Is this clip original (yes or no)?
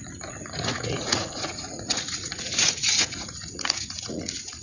no